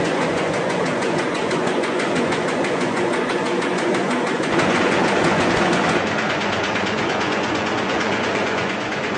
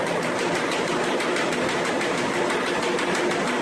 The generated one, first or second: first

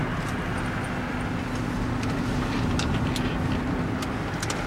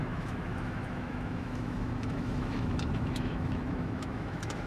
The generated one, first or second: second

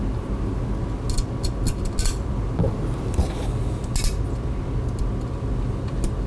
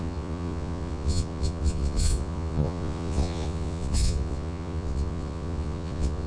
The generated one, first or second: second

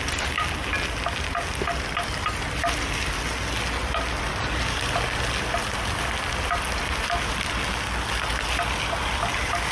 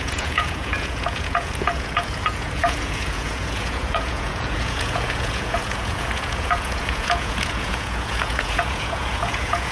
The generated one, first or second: second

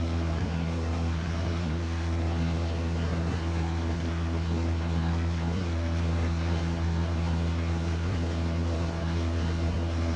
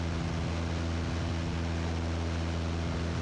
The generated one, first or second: first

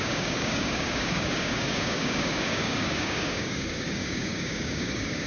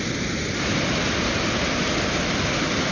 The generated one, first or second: first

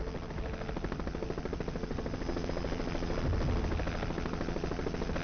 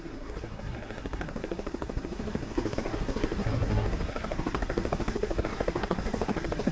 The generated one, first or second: second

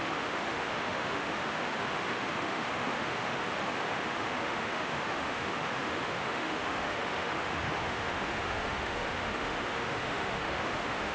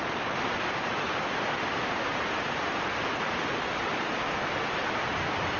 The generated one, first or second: first